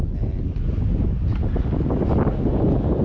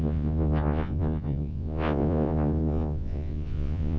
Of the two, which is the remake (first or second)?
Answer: second